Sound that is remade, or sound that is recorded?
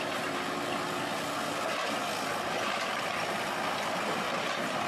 recorded